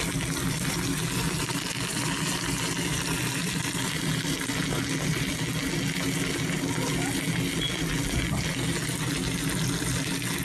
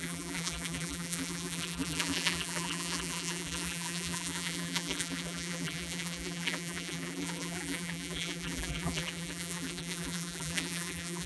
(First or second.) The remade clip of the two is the second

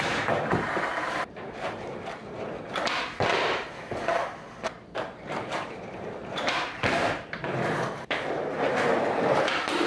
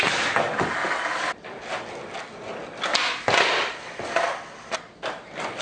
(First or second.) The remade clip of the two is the first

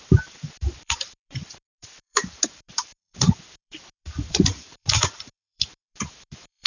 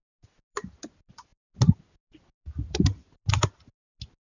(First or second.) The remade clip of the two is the first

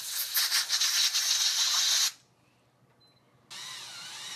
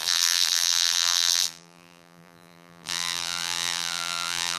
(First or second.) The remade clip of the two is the second